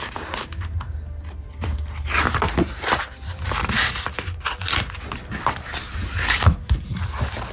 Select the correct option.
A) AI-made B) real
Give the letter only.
B